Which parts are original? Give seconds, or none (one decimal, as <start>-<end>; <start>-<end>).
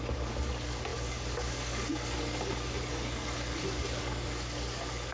none